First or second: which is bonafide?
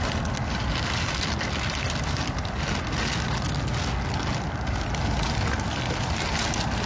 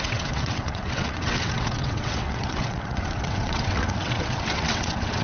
first